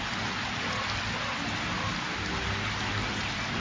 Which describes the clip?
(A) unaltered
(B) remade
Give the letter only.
A